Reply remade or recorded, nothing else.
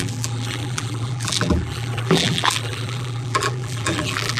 remade